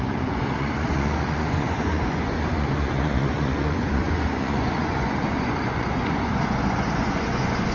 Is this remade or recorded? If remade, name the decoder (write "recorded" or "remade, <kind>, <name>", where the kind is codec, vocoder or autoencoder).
remade, vocoder, Vocos